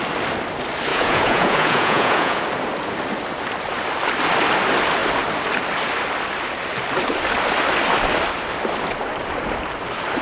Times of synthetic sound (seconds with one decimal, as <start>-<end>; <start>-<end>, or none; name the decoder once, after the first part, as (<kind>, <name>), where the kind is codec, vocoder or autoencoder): 0.9-2.4 (vocoder, Vocos)